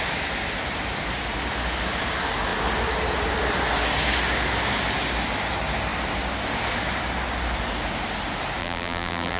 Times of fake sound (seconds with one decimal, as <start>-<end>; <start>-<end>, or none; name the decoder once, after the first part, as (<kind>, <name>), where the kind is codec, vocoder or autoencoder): 8.6-9.4 (vocoder, BigVGAN v2)